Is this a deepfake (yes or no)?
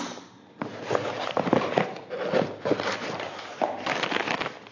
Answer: no